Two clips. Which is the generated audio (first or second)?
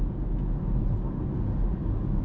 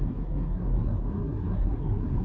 second